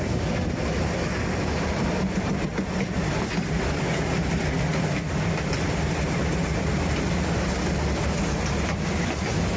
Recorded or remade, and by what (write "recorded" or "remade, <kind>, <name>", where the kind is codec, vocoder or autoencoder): recorded